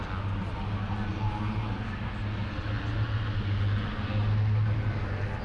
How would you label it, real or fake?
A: real